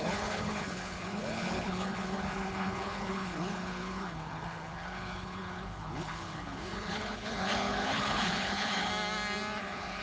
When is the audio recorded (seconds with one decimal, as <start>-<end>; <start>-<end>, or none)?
8.9-9.6